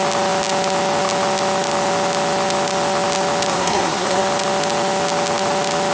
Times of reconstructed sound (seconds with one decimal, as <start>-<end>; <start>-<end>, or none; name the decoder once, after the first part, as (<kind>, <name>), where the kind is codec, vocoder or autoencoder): 3.5-4.2 (codec, SNAC)